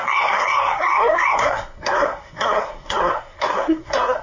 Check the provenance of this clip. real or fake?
fake